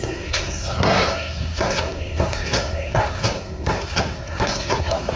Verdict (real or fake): fake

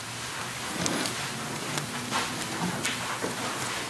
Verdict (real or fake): real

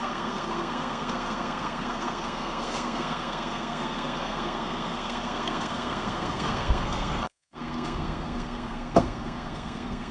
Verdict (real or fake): fake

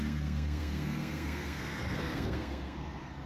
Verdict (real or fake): fake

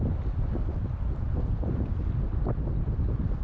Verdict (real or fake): real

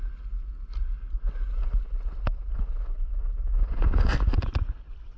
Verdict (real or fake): real